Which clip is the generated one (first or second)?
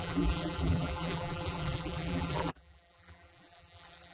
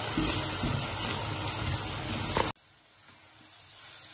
first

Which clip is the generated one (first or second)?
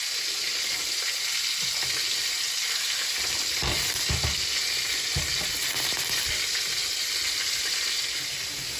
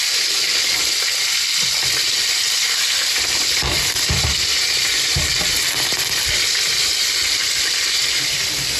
second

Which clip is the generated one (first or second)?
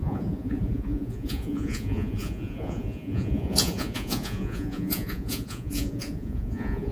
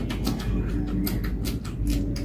first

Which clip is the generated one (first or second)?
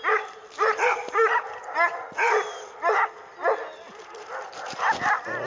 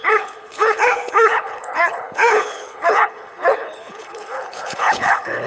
second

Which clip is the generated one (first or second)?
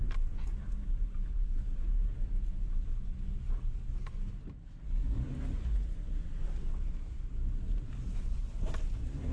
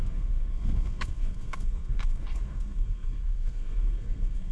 second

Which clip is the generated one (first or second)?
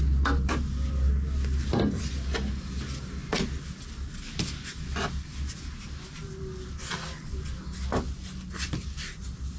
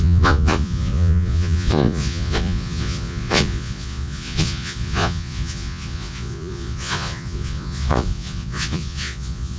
second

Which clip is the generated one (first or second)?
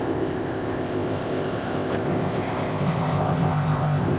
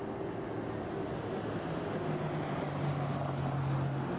first